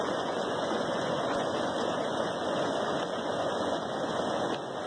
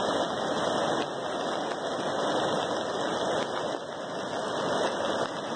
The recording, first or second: second